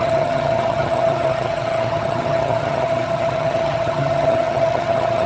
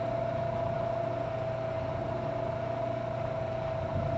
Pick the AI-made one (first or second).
first